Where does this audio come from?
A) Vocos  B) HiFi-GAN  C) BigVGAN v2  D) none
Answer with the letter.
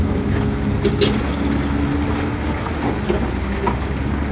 D